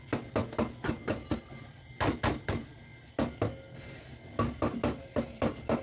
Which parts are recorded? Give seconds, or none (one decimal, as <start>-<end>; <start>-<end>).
0.0-5.8